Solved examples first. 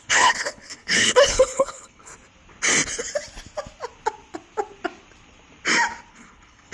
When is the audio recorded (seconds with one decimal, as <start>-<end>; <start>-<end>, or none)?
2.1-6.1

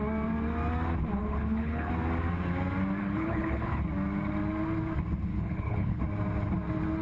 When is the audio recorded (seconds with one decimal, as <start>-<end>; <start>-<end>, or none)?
0.0-1.2; 1.9-3.0; 3.8-5.3; 6.0-7.0

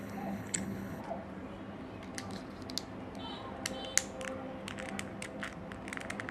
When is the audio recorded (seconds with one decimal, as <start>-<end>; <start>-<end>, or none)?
1.0-6.3